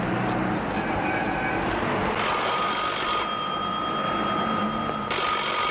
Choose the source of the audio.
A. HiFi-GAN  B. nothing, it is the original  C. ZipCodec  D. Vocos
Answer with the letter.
B